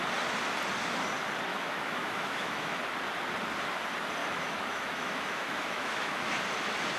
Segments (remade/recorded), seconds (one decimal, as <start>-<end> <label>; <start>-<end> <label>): 0.0-1.5 recorded; 1.5-2.8 remade; 2.8-4.2 recorded; 4.2-6.4 remade; 6.4-7.0 recorded